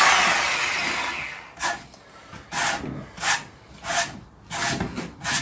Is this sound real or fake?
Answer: real